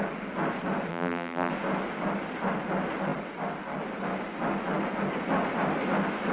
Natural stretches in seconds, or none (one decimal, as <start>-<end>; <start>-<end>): 0.0-0.9; 1.5-6.3